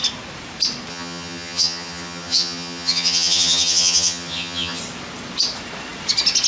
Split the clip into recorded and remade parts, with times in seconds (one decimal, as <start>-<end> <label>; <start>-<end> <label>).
0.0-0.9 recorded; 0.9-4.8 remade; 4.8-6.5 recorded